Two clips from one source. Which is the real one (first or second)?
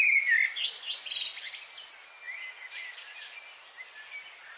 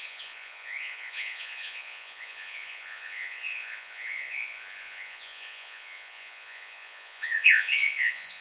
first